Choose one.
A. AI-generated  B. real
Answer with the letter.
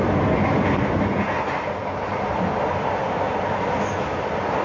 B